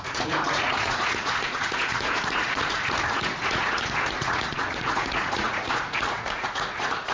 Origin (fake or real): fake